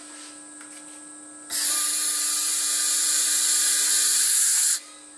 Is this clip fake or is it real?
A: real